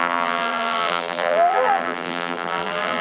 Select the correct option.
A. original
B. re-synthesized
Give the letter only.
B